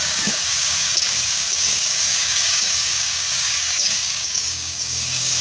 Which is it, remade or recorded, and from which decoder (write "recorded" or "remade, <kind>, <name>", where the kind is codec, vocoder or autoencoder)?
remade, codec, DAC